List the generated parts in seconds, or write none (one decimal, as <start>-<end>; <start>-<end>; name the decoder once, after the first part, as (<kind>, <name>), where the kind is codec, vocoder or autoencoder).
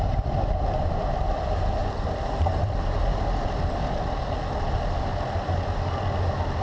1.8-3.5 (vocoder, BigVGAN v2)